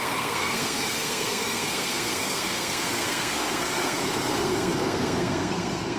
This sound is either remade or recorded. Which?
remade